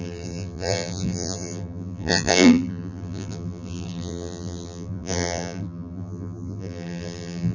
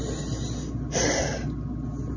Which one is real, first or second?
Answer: second